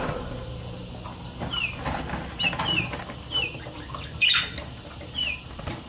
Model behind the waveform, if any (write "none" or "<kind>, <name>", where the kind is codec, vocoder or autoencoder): none